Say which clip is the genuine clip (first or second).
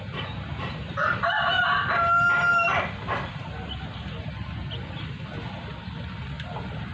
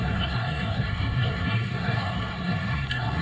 first